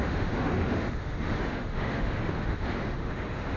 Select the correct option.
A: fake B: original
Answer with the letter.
A